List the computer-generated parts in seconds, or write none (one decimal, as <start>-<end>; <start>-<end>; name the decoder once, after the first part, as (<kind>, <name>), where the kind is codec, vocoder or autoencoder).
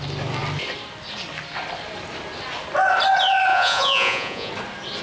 3.5-4.5 (vocoder, Vocos)